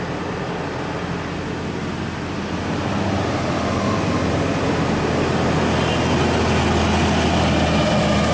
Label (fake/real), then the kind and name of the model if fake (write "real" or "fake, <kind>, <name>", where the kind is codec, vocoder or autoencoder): real